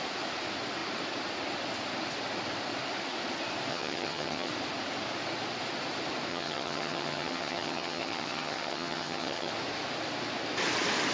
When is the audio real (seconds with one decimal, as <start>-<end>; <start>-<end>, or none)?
0.0-3.7; 4.5-6.3; 9.5-11.1